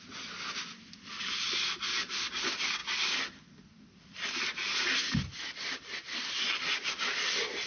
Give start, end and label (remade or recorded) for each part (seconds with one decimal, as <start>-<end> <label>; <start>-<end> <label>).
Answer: 0.0-7.7 recorded